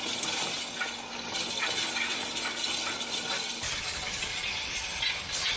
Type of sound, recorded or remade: recorded